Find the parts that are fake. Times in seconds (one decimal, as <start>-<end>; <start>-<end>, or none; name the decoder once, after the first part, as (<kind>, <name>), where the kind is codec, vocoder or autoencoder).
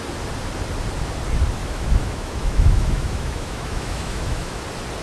1.6-4.6 (autoencoder, DAC-VAE)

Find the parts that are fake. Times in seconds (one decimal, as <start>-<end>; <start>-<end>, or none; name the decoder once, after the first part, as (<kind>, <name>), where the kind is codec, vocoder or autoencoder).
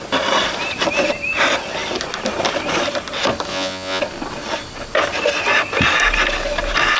3.5-4.0 (vocoder, Vocos)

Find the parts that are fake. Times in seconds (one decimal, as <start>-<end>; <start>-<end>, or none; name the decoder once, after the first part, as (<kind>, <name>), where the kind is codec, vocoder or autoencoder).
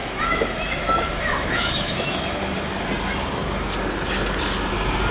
0.0-2.4 (autoencoder, DAC-VAE)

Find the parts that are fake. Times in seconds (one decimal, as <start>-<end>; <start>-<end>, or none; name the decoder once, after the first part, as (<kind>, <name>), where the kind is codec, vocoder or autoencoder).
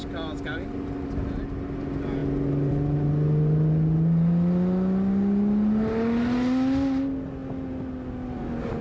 none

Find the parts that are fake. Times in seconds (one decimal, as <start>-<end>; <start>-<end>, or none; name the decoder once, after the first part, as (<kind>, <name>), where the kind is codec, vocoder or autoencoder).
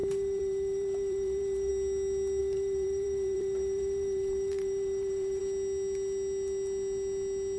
0.0-1.7 (vocoder, BigVGAN v2); 2.4-5.4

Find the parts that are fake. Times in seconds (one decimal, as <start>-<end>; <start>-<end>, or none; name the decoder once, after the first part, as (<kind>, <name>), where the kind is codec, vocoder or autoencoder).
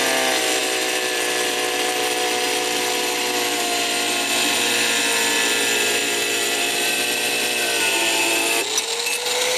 0.6-4.3 (vocoder, BigVGAN v2); 6.0-7.8